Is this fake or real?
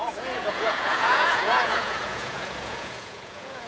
fake